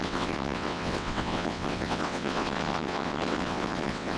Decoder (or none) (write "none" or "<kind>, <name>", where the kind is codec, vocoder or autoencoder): vocoder, WaveNeXt